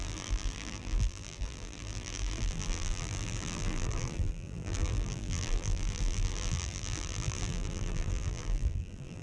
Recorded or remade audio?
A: remade